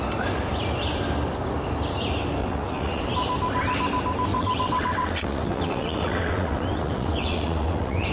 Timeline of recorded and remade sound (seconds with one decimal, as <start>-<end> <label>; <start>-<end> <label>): 0.0-2.4 recorded; 2.4-3.1 remade; 3.1-4.3 recorded; 4.3-8.1 remade